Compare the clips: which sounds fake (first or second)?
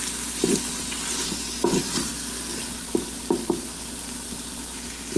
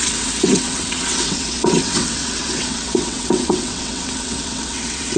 second